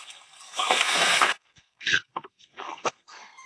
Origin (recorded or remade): remade